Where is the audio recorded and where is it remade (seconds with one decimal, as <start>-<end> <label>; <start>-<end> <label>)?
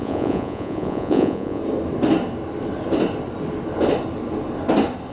0.0-1.6 remade; 1.6-5.1 recorded